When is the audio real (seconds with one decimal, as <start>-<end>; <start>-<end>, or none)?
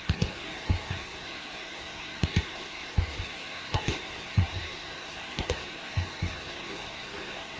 none